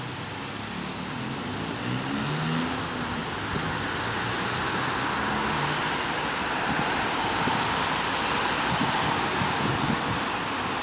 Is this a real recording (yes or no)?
yes